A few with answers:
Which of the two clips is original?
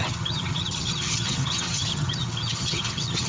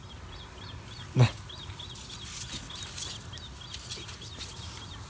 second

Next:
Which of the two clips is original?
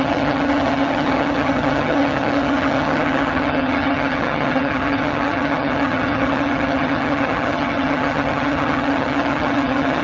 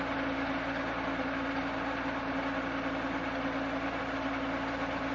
second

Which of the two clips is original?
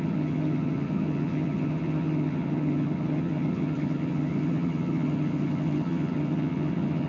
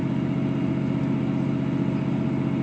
second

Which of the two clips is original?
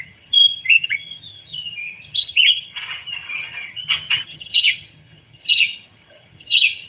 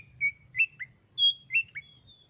second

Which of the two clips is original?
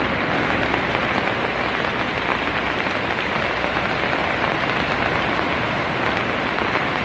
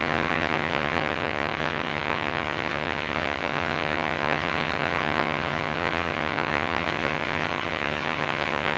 first